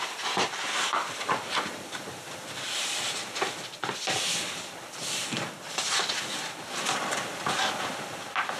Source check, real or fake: real